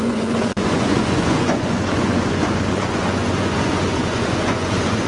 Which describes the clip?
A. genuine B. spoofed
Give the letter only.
B